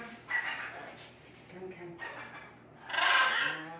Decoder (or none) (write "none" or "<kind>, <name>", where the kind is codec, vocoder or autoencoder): none